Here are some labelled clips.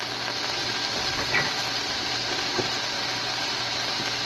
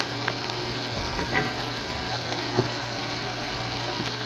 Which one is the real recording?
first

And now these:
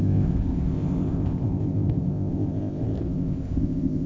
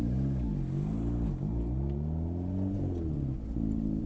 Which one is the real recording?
second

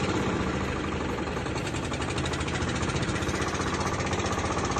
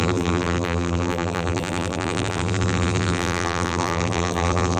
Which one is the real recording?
first